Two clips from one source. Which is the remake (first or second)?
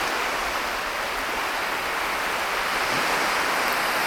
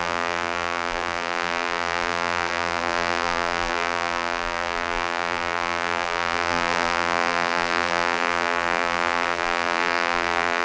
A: second